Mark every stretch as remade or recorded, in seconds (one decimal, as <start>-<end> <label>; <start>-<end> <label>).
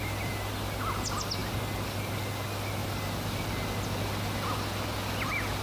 0.0-2.8 recorded; 2.8-3.5 remade; 3.5-5.6 recorded